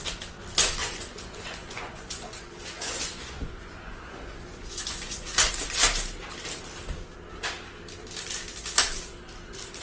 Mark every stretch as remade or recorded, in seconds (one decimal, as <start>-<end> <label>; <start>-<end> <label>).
0.0-0.8 recorded; 0.8-5.5 remade; 5.5-9.8 recorded